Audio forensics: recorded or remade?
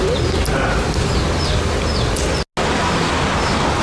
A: recorded